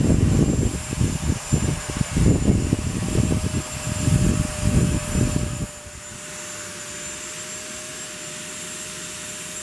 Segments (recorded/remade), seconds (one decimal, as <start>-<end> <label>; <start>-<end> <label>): 0.0-9.6 recorded